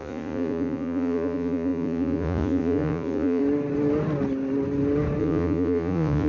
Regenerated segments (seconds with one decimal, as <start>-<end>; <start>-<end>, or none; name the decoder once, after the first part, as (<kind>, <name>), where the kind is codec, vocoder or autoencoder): 0.0-3.4 (vocoder, Vocos); 5.2-6.3